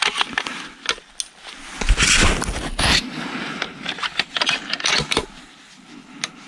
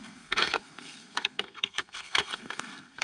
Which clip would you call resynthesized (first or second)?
second